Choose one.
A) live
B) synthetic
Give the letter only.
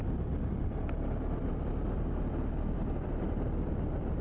A